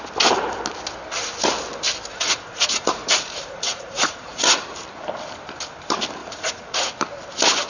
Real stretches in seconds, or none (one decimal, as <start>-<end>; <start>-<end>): 0.0-2.1; 4.6-6.2; 6.9-7.7